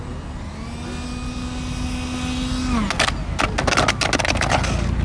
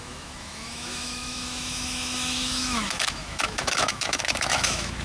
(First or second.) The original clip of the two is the first